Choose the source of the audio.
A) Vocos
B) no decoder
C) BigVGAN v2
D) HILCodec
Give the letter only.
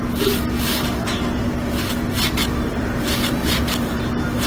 B